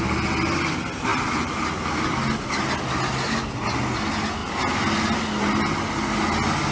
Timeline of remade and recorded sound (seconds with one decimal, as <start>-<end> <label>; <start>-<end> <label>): 0.0-1.1 recorded; 1.1-2.6 remade; 2.6-6.7 recorded